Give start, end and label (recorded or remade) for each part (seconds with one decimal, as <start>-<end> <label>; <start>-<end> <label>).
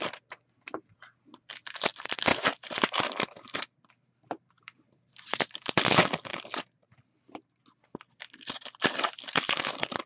0.0-2.3 recorded; 2.3-5.8 remade; 5.8-6.3 recorded; 6.3-7.6 remade; 7.6-10.1 recorded